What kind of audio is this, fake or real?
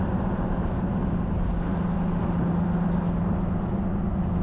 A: real